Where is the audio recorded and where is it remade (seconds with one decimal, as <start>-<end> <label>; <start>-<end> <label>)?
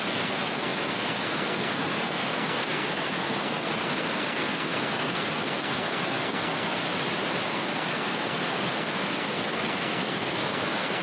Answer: 0.0-6.8 remade; 6.8-7.5 recorded; 7.5-11.0 remade